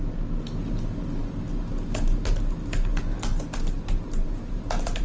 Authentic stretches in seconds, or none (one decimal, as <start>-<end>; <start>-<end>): 0.0-3.3